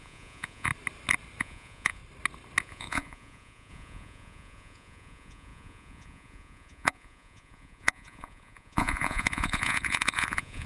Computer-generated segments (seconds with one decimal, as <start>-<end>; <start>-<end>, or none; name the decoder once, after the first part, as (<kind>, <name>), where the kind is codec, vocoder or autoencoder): 0.0-0.7 (vocoder, Vocos); 1.4-2.0; 2.6-10.7